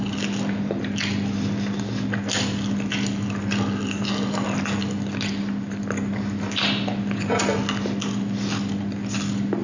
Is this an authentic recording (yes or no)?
yes